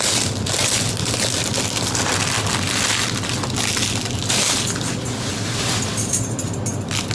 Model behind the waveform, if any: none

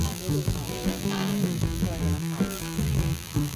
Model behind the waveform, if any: vocoder, BigVGAN v2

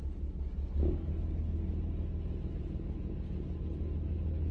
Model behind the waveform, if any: none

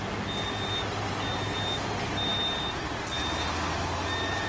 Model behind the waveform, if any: none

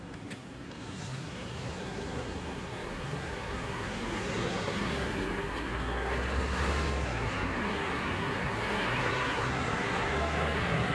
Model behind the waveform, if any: codec, SNAC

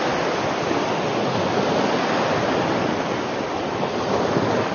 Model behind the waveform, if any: none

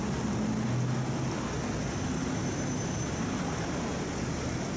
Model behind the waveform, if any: none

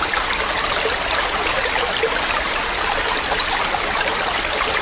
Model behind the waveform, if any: none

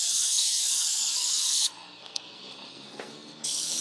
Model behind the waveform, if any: codec, SNAC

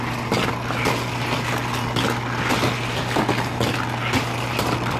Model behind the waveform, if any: none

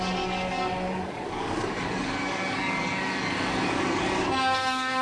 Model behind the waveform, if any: codec, DAC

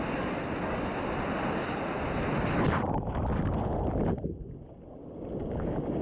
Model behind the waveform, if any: none